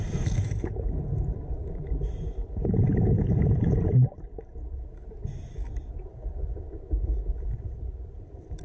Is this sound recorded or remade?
remade